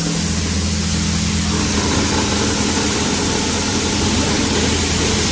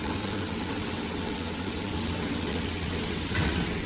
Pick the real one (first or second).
first